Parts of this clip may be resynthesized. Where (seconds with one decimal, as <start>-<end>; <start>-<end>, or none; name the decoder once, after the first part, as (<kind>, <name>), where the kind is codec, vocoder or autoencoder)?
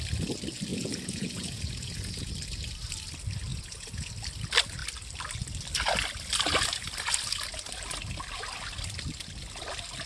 0.7-2.3 (vocoder, Vocos); 3.5-4.1